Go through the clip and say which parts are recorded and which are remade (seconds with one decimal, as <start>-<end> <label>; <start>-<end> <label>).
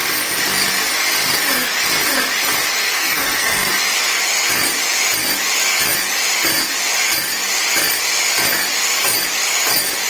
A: 0.0-2.8 recorded; 2.8-3.7 remade; 3.7-10.1 recorded